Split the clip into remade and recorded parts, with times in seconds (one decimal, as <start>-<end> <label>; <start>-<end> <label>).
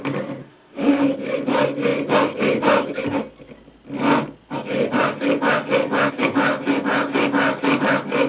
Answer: 0.0-0.4 recorded; 0.4-1.0 remade; 1.0-8.3 recorded